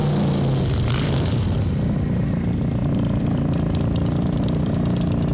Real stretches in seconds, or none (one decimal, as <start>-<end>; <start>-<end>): 0.0-2.8; 4.7-5.3